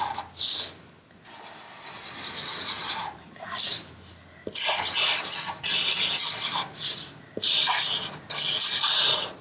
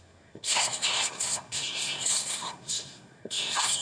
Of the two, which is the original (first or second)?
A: first